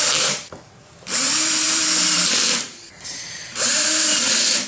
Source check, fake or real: fake